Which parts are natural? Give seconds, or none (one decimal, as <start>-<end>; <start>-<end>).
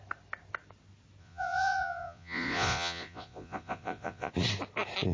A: 0.0-1.2; 4.3-5.1